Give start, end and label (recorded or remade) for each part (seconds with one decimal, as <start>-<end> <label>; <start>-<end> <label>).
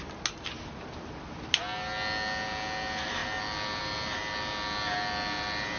0.0-5.8 recorded